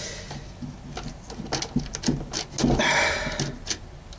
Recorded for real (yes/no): yes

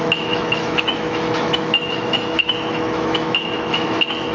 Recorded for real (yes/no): no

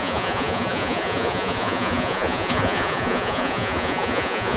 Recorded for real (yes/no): no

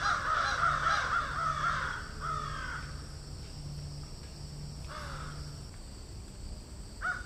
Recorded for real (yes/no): yes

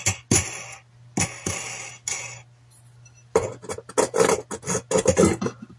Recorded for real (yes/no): yes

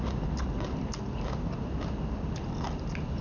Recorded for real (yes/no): yes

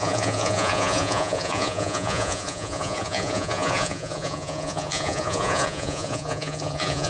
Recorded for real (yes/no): no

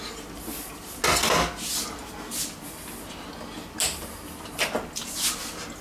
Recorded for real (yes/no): yes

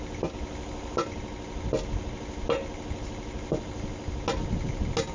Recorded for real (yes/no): yes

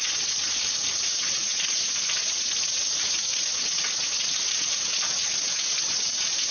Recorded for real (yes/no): no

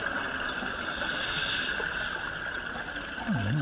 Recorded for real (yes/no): yes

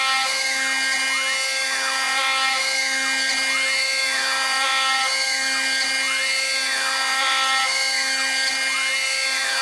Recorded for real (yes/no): yes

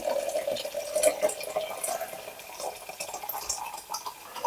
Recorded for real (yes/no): yes